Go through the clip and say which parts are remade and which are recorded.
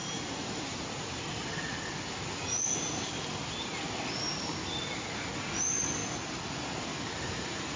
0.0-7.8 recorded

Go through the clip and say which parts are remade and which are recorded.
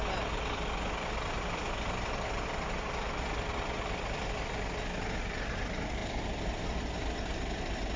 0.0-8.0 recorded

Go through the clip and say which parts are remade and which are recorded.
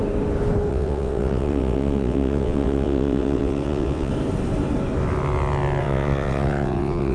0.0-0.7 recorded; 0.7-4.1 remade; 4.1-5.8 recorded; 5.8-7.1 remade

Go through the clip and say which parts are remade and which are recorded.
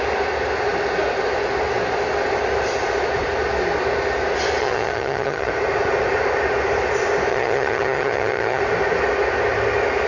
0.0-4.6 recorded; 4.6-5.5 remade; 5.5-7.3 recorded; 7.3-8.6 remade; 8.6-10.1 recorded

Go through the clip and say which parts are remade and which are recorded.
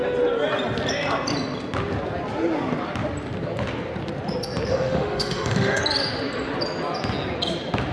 0.0-4.7 recorded; 4.7-5.8 remade; 5.8-7.9 recorded